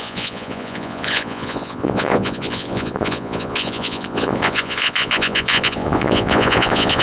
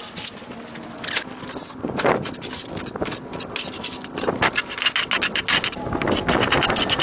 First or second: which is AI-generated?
first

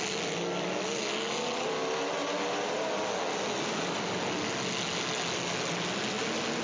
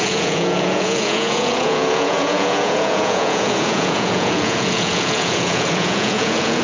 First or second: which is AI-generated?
second